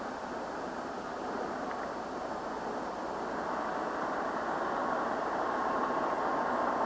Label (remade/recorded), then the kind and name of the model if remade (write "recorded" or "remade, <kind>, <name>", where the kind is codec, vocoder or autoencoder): recorded